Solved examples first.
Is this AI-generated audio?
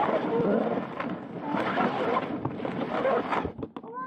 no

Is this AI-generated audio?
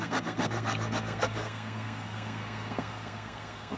yes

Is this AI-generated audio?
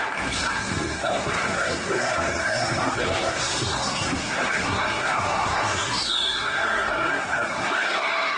yes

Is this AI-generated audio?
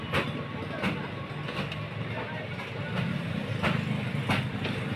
no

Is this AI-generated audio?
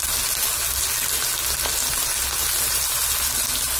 no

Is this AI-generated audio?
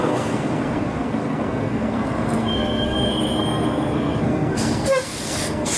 yes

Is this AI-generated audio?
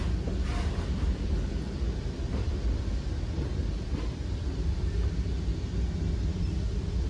no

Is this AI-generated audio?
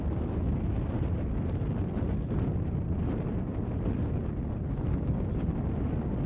no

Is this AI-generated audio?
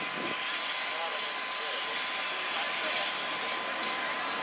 no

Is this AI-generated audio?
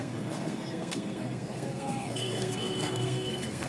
yes